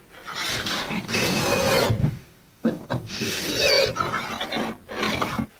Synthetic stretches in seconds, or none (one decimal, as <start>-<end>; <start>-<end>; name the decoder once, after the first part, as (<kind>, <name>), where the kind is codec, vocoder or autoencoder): 0.5-1.4 (codec, DAC); 2.0-3.5